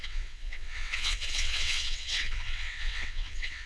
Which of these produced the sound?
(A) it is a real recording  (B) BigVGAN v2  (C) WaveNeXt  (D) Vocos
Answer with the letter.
C